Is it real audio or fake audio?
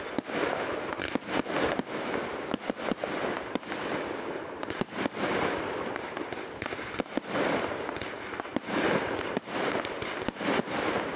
real